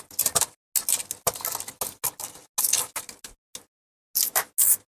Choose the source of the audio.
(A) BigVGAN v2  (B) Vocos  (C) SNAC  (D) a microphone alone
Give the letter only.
D